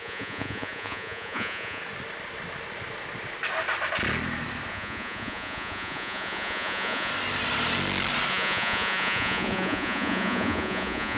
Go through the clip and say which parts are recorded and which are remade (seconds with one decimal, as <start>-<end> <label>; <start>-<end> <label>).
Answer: 0.0-1.8 remade; 1.8-4.7 recorded; 4.7-7.1 remade; 7.1-8.3 recorded; 8.3-11.2 remade